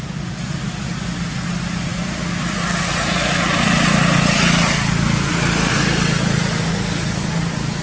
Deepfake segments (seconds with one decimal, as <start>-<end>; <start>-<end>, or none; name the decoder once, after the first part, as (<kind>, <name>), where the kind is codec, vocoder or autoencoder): none